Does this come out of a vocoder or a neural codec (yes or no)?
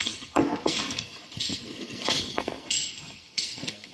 yes